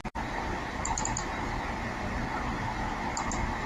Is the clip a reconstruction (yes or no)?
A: no